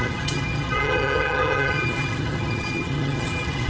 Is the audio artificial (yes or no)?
yes